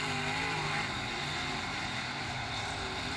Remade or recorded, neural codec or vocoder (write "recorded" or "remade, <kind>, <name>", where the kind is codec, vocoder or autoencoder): recorded